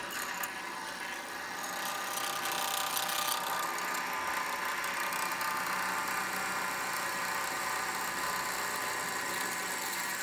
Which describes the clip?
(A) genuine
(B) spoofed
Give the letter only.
A